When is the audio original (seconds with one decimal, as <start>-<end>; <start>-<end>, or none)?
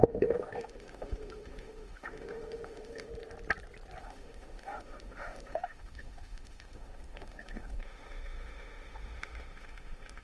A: 3.1-4.0